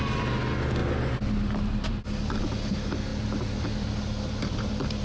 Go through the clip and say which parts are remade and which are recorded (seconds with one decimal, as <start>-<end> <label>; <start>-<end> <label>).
0.0-5.0 recorded